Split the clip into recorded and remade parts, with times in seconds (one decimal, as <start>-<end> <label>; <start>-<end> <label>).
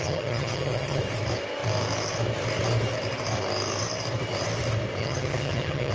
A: 0.0-1.0 remade; 1.0-5.0 recorded; 5.0-5.9 remade